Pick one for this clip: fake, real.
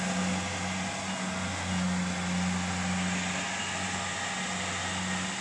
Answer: real